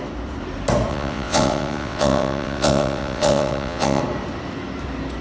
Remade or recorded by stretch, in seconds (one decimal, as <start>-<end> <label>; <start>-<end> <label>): 0.0-0.9 recorded; 0.9-4.0 remade; 4.0-5.2 recorded